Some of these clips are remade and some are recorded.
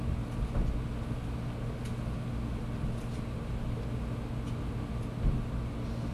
recorded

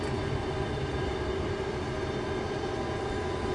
recorded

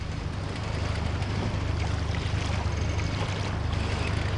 recorded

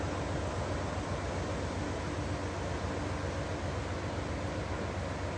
recorded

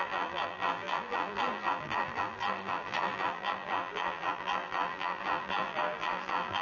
remade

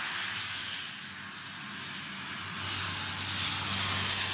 recorded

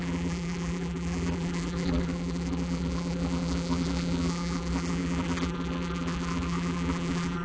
remade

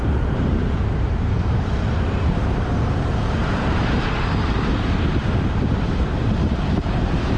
remade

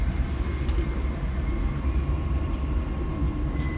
remade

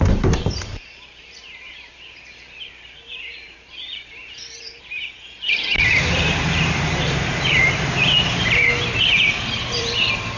remade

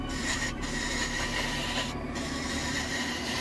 remade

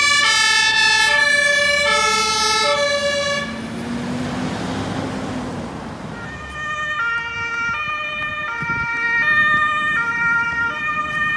recorded